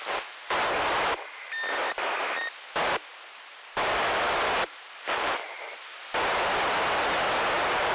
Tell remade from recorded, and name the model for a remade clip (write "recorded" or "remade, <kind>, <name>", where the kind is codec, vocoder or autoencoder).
recorded